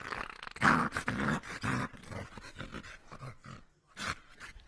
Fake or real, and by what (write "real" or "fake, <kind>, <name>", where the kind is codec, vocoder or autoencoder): real